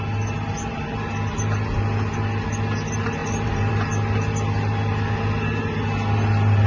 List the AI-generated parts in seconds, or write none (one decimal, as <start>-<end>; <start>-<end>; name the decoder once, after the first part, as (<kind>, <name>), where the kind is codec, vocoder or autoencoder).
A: 3.2-3.7 (vocoder, BigVGAN v2)

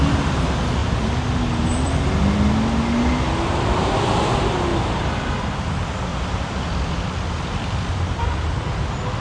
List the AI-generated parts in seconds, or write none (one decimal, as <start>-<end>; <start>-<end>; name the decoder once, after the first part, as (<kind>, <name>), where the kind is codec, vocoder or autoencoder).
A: 0.8-2.2 (vocoder, BigVGAN v2); 4.7-5.5; 6.1-8.1

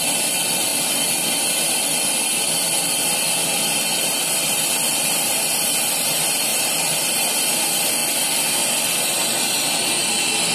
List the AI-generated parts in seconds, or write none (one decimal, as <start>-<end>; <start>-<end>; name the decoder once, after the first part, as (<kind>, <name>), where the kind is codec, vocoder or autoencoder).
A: 6.5-7.3 (vocoder, BigVGAN v2)

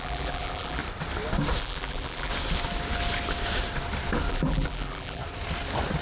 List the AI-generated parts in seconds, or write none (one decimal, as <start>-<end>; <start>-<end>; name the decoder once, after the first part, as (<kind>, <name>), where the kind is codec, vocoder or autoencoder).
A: 0.0-0.8 (vocoder, BigVGAN v2); 1.6-2.3; 4.3-5.2

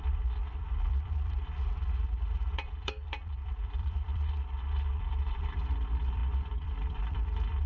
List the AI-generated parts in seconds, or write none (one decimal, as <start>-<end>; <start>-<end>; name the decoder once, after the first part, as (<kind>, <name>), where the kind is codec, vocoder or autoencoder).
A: 0.0-7.7 (vocoder, BigVGAN v2)

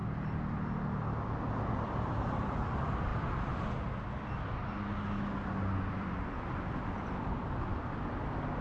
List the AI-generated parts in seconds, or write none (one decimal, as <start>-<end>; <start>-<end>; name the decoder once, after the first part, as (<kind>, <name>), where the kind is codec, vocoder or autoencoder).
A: 1.7-3.1 (vocoder, BigVGAN v2); 5.9-8.6